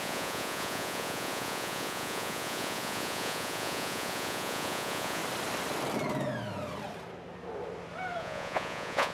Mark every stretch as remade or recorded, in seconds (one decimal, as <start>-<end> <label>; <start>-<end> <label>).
0.0-5.2 remade; 5.2-8.2 recorded; 8.2-9.1 remade